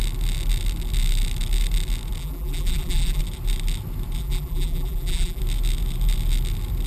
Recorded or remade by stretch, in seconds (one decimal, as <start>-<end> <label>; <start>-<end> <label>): 0.0-2.2 recorded; 2.2-3.2 remade; 3.2-4.2 recorded; 4.2-5.4 remade; 5.4-6.9 recorded